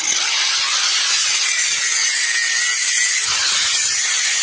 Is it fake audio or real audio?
real